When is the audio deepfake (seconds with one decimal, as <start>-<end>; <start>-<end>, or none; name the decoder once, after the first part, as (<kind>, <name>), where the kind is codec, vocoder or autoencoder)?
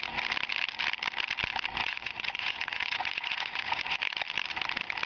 1.8-4.0 (vocoder, Vocos)